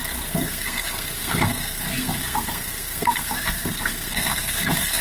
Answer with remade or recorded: remade